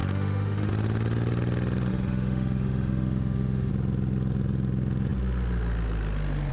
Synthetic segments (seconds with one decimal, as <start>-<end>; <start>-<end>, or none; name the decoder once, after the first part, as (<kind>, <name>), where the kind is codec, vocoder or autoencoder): 0.0-0.7 (autoencoder, DAC-VAE); 1.9-3.7